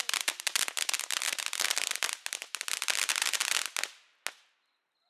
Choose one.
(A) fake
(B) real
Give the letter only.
B